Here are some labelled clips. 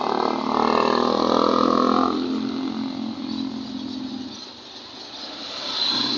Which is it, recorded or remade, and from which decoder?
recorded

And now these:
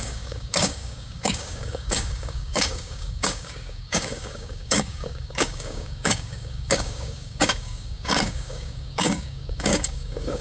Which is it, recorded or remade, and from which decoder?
remade, codec, DAC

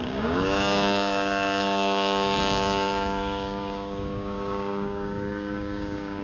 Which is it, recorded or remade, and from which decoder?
remade, codec, DAC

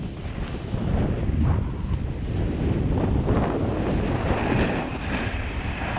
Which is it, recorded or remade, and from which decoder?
recorded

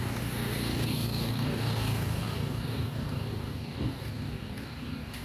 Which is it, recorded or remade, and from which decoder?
remade, codec, DAC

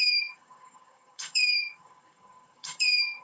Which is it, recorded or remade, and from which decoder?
remade, codec, DAC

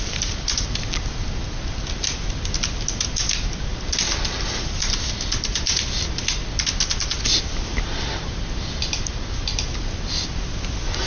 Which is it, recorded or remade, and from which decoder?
recorded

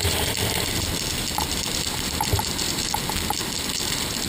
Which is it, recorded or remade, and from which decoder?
recorded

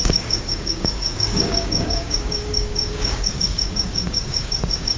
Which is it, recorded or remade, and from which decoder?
remade, codec, DAC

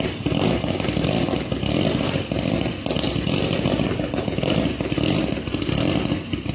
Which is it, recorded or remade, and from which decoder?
recorded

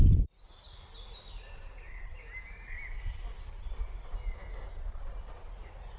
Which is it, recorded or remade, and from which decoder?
recorded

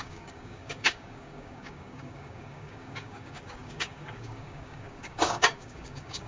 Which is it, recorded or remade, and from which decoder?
remade, codec, DAC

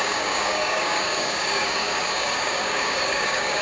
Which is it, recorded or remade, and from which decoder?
remade, codec, DAC